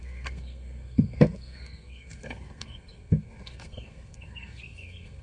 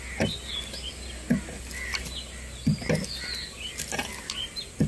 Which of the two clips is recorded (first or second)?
second